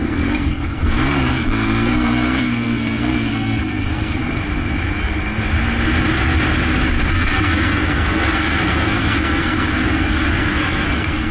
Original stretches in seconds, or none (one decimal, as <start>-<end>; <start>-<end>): 4.2-7.1